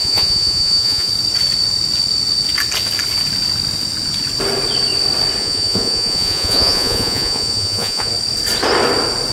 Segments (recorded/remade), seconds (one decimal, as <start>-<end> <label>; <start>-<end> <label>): 0.0-1.1 remade; 1.1-5.4 recorded; 5.4-8.1 remade; 8.1-9.3 recorded